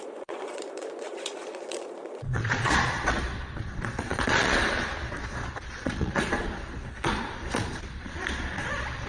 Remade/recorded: remade